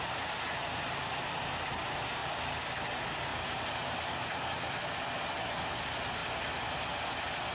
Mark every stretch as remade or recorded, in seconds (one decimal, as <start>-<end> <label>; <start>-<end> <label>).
0.0-7.5 recorded